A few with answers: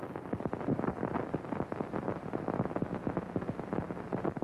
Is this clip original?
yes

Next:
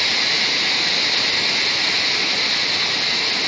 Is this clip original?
yes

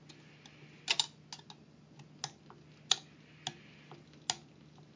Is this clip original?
yes